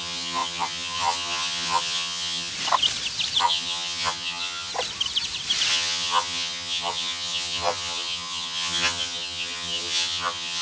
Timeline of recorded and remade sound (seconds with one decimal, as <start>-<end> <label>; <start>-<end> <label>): 0.0-2.5 remade; 2.5-3.4 recorded; 3.4-4.7 remade; 4.7-5.7 recorded; 5.7-10.6 remade